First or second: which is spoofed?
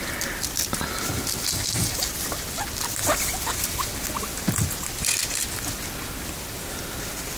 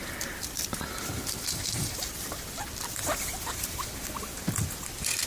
second